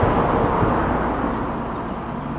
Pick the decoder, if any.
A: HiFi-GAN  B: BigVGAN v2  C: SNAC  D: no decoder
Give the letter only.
D